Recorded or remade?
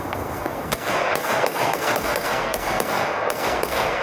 remade